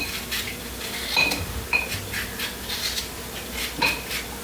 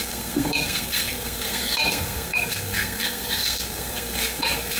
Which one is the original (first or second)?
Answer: first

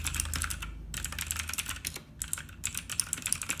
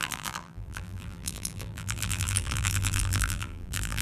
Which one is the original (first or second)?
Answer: first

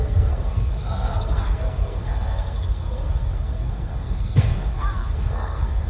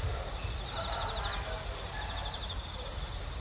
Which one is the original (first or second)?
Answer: second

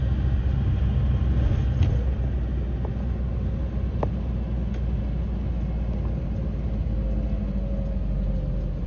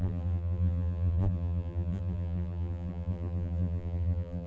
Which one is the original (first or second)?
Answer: first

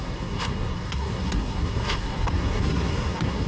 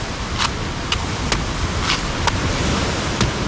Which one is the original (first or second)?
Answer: second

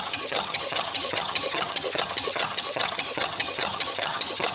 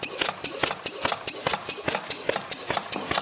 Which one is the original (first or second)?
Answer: second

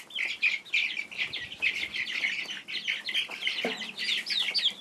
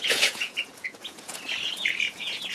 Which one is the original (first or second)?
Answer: first